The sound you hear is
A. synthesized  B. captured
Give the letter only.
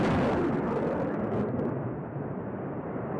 A